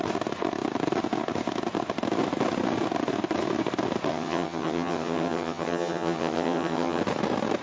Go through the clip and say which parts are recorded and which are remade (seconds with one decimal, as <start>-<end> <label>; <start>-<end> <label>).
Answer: 0.0-4.1 recorded; 4.1-7.0 remade; 7.0-7.6 recorded